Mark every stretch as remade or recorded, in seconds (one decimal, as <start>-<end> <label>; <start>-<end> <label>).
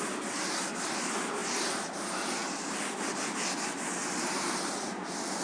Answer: 0.0-5.4 recorded